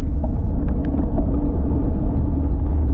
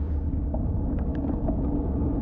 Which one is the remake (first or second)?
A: second